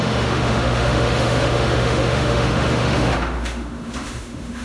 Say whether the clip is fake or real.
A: fake